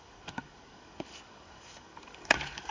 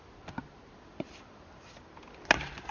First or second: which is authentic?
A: second